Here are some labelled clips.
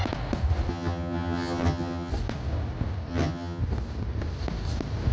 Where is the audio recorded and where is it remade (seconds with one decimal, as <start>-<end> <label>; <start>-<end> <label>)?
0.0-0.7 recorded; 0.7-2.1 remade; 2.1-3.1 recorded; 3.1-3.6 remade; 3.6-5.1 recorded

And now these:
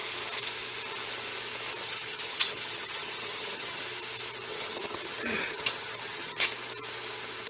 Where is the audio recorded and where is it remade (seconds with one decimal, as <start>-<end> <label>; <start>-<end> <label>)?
0.0-1.8 recorded; 1.8-3.8 remade; 3.8-4.5 recorded; 4.5-6.4 remade; 6.4-7.5 recorded

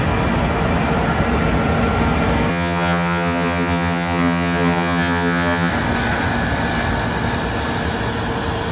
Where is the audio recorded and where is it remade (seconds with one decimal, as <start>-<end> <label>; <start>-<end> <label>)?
0.0-2.5 recorded; 2.5-5.7 remade; 5.7-8.7 recorded

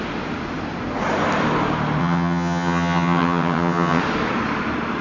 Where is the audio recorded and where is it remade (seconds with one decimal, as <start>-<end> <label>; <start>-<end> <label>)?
0.0-2.0 recorded; 2.0-4.0 remade; 4.0-5.0 recorded

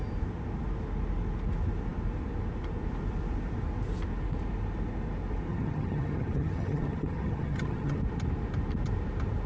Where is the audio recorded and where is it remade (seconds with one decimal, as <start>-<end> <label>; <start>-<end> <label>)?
0.0-5.5 recorded; 5.5-8.0 remade; 8.0-9.5 recorded

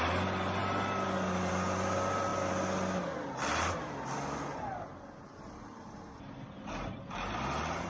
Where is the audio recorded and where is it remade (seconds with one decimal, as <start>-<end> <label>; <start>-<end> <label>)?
0.0-7.9 recorded

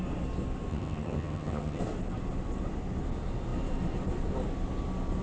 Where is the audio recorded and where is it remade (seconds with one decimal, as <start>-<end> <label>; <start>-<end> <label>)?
0.0-0.7 recorded; 0.7-1.8 remade; 1.8-5.2 recorded